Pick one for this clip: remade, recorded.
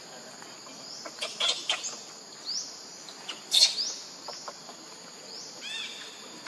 recorded